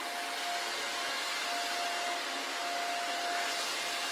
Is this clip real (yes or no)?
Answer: yes